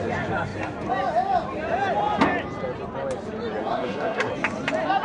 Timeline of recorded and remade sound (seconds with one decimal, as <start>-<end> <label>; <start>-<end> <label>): 0.0-3.6 recorded; 3.6-4.3 remade; 4.3-5.0 recorded